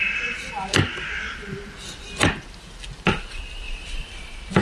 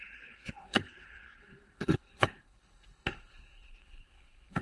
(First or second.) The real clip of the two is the first